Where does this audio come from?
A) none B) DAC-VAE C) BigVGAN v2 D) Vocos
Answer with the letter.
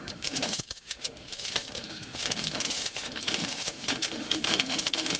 B